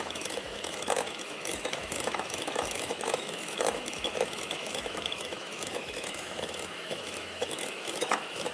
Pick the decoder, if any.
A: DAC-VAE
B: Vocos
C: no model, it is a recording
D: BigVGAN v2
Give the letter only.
A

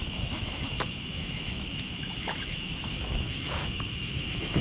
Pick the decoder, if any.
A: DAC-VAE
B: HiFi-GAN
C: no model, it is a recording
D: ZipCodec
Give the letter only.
A